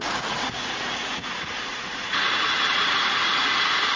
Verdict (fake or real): fake